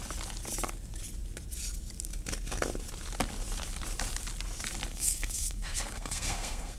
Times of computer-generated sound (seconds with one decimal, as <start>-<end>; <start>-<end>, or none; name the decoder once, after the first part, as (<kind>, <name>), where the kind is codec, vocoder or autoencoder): 4.9-6.8 (codec, SNAC)